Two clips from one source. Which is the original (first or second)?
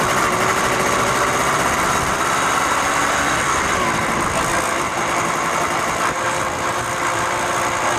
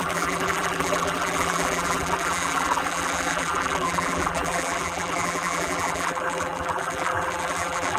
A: first